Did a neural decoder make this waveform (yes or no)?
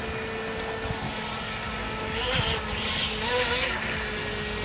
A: no